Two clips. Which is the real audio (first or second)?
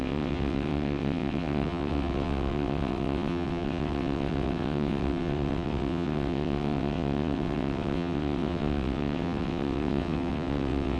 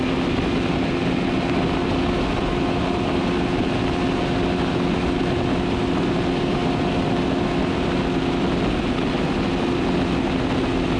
second